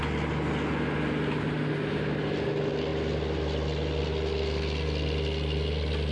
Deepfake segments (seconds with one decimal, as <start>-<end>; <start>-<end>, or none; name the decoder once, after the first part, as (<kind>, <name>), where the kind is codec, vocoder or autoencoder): none